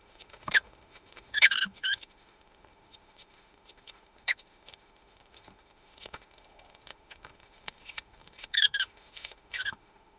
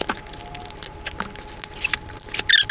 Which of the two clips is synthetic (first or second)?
first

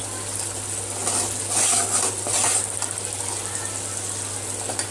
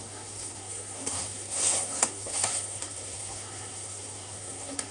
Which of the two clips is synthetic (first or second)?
second